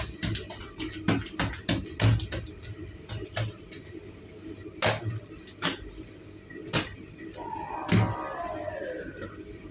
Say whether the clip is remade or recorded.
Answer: recorded